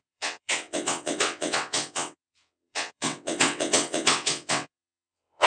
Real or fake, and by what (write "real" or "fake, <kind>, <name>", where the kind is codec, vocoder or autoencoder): fake, vocoder, WaveNeXt